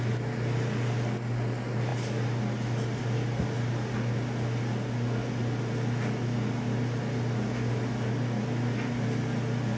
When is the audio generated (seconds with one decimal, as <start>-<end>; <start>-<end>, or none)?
none